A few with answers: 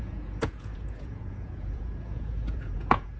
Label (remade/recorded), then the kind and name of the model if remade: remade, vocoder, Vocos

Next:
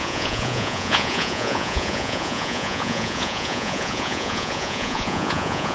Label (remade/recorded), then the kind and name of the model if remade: remade, vocoder, Vocos